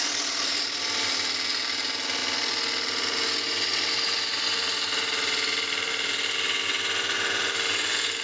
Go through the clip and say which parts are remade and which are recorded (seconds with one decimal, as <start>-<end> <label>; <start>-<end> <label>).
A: 0.0-8.2 recorded